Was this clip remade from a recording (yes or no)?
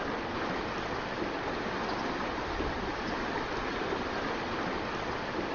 no